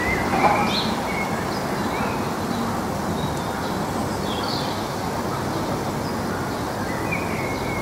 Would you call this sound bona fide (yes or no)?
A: yes